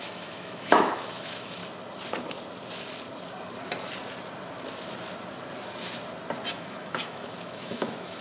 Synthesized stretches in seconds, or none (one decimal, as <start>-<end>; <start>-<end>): 0.0-1.6; 6.5-8.2